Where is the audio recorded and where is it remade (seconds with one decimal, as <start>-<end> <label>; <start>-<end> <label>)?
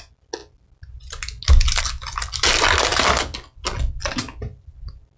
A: 0.0-5.2 recorded